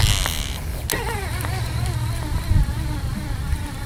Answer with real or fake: real